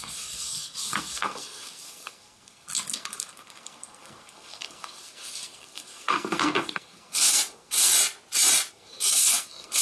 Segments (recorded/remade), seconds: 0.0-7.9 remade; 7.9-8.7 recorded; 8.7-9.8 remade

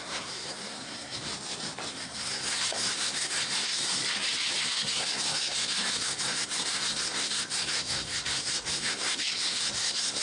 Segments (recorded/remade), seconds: 0.0-1.3 remade; 1.3-1.9 recorded; 1.9-4.0 remade; 4.0-4.6 recorded; 4.6-10.2 remade

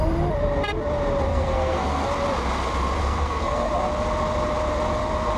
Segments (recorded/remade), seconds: 0.0-1.3 recorded; 1.3-2.1 remade; 2.1-3.0 recorded; 3.0-3.7 remade; 3.7-5.4 recorded

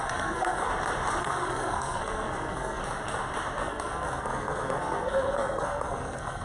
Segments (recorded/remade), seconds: 0.0-0.7 remade; 0.7-1.2 recorded; 1.2-2.8 remade; 2.8-3.6 recorded; 3.6-6.4 remade

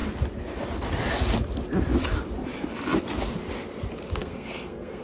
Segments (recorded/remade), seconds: 0.0-4.2 recorded; 4.2-5.0 remade

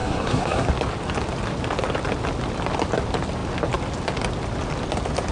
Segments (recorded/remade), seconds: 0.0-0.7 remade; 0.7-5.3 recorded

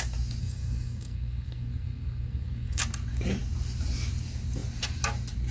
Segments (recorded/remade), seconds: 0.0-0.4 recorded; 0.4-2.8 remade; 2.8-5.5 recorded